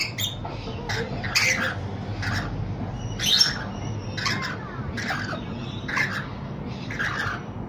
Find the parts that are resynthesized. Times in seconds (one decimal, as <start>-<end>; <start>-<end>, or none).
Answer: none

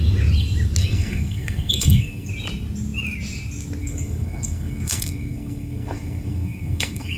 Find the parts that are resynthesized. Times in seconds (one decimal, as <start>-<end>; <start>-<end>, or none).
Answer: 0.8-2.3; 3.8-7.2

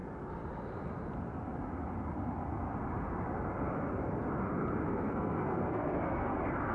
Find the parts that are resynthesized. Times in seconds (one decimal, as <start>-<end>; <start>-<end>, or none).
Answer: 4.9-6.3

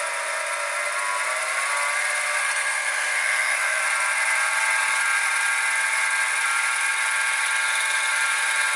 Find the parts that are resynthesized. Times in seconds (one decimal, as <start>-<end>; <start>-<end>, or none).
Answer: 2.4-3.8

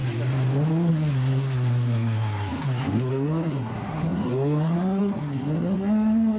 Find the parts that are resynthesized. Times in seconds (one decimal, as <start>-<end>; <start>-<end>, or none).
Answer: 0.9-6.4

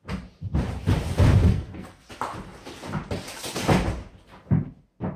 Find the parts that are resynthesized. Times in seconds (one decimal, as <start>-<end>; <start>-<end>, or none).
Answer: 1.5-2.1

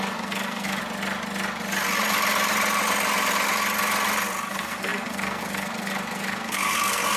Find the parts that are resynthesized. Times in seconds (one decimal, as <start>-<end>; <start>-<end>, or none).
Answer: 0.0-0.8; 4.5-7.2